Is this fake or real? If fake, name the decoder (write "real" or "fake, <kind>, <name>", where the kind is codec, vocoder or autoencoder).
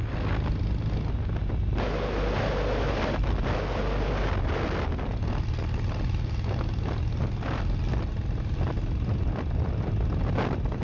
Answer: real